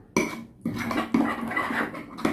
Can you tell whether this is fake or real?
real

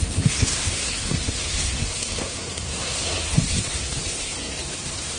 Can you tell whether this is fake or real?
fake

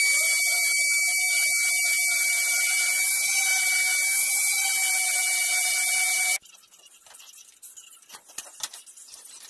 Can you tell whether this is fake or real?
real